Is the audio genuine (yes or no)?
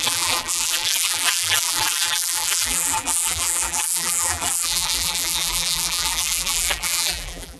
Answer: no